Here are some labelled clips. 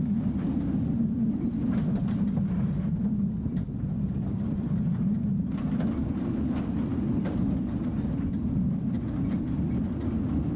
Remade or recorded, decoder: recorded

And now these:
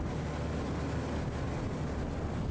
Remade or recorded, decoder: recorded